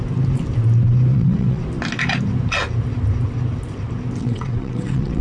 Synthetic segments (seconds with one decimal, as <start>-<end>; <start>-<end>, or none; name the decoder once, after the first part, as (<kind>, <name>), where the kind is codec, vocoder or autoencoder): 1.1-1.6 (vocoder, WaveNeXt); 4.2-5.2